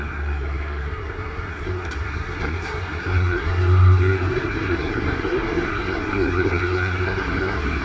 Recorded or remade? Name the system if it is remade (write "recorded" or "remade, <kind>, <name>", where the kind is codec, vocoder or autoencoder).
remade, codec, SNAC